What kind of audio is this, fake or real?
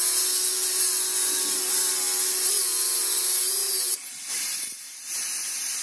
real